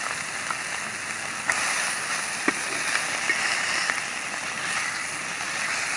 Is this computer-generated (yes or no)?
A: no